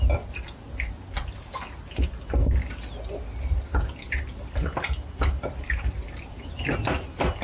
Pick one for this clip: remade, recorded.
recorded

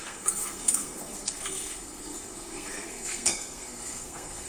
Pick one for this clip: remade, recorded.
remade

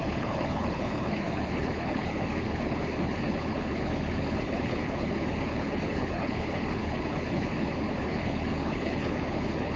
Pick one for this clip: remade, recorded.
remade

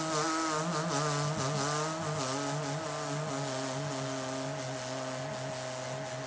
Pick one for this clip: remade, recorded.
recorded